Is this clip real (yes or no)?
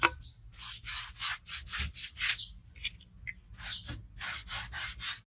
yes